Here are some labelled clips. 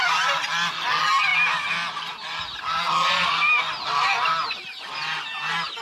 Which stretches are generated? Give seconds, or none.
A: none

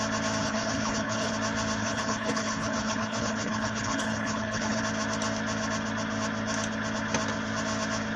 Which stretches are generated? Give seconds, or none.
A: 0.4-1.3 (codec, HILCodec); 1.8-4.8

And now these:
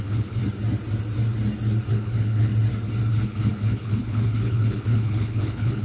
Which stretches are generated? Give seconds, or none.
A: 0.0-0.4 (codec, HILCodec); 1.9-2.5; 3.1-5.8

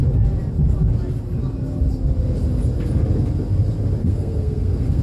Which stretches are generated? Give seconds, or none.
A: 4.0-5.0 (codec, SNAC)

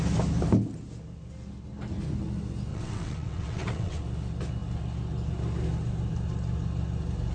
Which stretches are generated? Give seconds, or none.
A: 2.7-4.0 (vocoder, WaveNeXt)